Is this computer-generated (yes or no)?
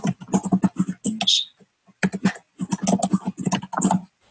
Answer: no